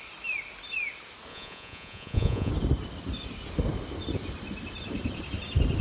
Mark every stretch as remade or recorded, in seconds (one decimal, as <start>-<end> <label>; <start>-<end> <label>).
0.0-1.3 recorded; 1.3-2.5 remade; 2.5-5.8 recorded

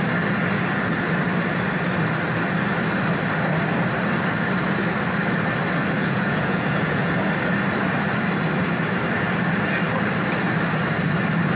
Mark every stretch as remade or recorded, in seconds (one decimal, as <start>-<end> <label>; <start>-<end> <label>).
0.0-6.0 recorded; 6.0-7.1 remade; 7.1-11.6 recorded

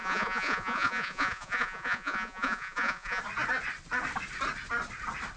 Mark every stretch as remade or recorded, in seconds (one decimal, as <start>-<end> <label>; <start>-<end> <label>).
0.0-3.2 remade; 3.2-5.4 recorded

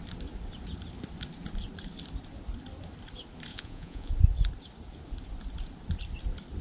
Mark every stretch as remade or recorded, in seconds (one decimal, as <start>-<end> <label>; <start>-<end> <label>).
0.0-3.5 recorded; 3.5-4.1 remade; 4.1-6.6 recorded